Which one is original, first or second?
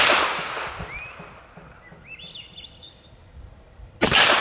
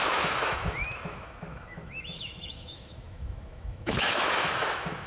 first